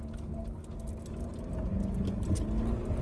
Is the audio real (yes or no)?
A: yes